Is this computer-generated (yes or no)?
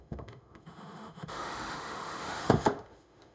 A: yes